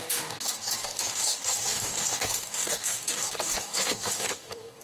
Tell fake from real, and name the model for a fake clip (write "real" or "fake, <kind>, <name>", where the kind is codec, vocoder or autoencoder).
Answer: fake, codec, DAC